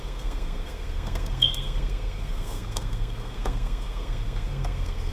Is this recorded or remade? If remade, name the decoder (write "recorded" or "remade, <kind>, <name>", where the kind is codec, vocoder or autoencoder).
remade, codec, SNAC